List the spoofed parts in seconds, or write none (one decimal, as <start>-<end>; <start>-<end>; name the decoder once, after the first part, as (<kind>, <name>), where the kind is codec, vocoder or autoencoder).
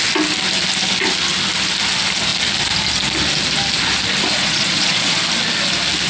4.3-5.2 (vocoder, Vocos)